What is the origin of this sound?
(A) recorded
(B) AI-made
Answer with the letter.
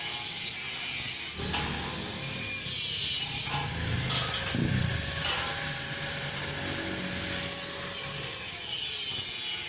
A